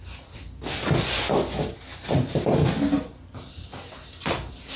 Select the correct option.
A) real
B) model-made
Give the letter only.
A